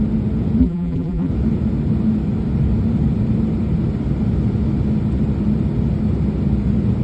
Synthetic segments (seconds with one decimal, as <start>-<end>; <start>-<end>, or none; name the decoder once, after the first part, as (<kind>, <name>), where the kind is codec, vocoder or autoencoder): 0.6-1.3 (vocoder, BigVGAN v2)